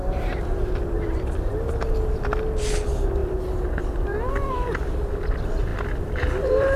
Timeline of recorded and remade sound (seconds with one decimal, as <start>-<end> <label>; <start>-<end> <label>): 0.0-3.2 recorded; 3.2-4.3 remade; 4.3-5.7 recorded; 5.7-6.8 remade